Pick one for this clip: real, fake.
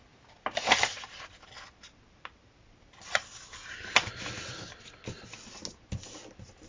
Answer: real